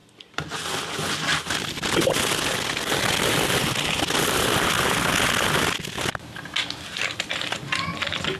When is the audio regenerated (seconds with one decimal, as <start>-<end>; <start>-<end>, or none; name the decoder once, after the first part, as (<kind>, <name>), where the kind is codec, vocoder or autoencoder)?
none